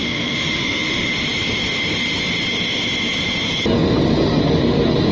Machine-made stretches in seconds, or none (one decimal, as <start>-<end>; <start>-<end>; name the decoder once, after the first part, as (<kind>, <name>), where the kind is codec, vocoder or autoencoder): 0.0-1.1 (autoencoder, DAC-VAE)